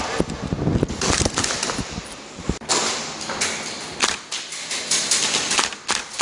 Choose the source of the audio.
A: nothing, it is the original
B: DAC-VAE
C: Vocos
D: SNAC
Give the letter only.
A